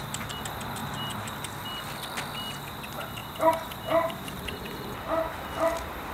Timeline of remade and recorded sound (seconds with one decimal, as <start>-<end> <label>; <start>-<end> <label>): 0.0-0.8 recorded; 0.8-1.6 remade; 1.6-3.2 recorded; 3.2-4.9 remade; 4.9-6.1 recorded